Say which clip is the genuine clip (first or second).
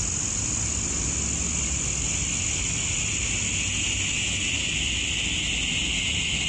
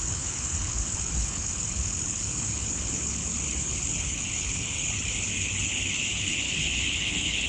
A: first